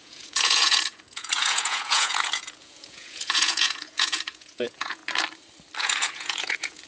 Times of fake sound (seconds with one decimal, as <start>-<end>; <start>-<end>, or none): 0.0-5.0; 5.8-6.9